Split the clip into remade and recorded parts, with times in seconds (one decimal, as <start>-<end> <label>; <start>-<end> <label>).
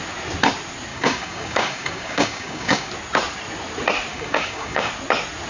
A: 0.0-0.9 recorded; 0.9-2.9 remade; 2.9-4.1 recorded; 4.1-4.9 remade; 4.9-5.5 recorded